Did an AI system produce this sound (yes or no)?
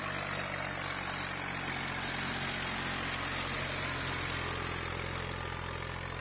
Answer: no